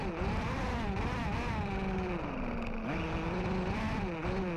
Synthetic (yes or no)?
no